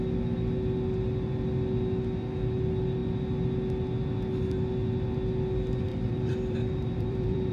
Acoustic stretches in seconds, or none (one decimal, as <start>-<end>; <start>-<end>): 0.0-5.9